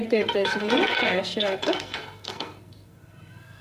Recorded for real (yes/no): no